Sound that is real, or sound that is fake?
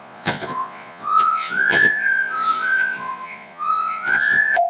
fake